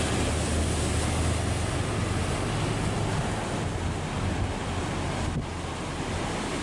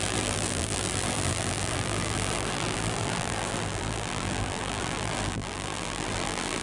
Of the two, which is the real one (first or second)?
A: first